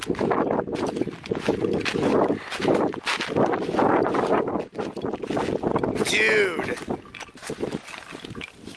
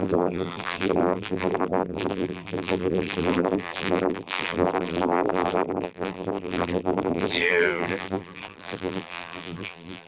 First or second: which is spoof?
second